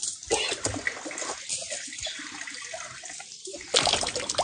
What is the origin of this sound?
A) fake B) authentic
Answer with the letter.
B